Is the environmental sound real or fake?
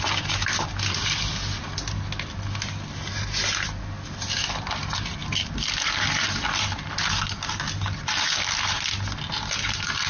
real